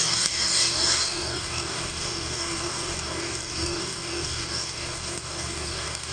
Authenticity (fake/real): fake